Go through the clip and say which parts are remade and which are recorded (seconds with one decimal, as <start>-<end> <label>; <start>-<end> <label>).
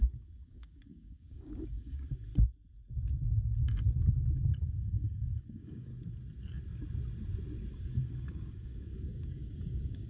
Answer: 0.0-2.3 remade; 2.3-4.0 recorded; 4.0-5.9 remade; 5.9-7.7 recorded; 7.7-10.1 remade